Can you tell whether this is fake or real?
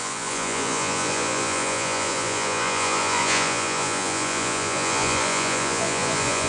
fake